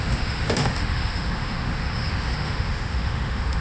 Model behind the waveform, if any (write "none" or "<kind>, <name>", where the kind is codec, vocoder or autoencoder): autoencoder, DAC-VAE